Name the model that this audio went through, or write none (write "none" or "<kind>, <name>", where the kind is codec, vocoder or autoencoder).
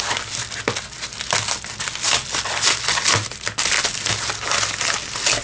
none